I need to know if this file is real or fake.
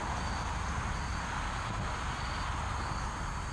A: real